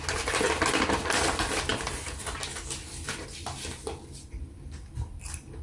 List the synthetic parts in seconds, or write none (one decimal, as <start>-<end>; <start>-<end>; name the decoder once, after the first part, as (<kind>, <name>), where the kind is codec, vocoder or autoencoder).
none